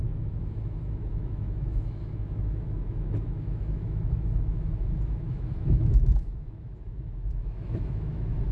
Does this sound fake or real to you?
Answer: fake